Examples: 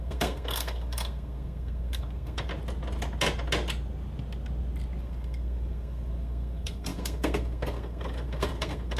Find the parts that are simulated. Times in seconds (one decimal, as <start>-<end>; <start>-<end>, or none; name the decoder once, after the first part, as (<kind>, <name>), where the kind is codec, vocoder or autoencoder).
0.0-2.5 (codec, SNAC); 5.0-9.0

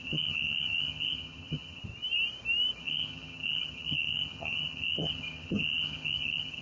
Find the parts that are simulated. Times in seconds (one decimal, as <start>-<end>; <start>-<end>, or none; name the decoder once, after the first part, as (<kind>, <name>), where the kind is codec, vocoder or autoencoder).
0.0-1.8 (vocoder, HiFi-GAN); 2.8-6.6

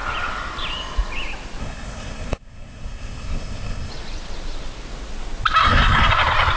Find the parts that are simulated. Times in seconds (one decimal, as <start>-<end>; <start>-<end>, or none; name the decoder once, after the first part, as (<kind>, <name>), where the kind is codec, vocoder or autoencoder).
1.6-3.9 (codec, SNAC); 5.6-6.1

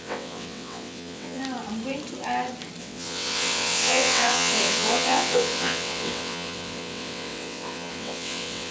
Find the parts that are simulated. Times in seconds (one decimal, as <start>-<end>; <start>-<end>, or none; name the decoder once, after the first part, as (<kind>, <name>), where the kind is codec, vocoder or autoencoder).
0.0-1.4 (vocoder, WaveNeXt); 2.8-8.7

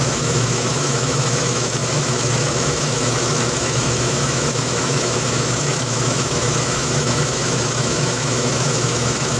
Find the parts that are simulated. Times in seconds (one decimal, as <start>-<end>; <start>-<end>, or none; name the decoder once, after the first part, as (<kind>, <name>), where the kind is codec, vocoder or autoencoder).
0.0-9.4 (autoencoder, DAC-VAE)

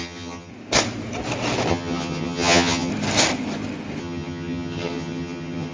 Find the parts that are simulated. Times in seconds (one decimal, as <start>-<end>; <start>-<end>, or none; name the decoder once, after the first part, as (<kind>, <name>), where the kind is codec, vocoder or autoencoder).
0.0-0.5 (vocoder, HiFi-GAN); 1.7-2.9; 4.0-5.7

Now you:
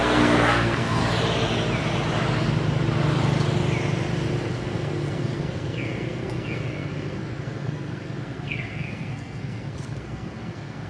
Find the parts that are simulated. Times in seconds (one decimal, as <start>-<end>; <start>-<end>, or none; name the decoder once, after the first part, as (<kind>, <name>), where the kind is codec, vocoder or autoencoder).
0.0-1.0 (codec, SNAC); 4.5-10.9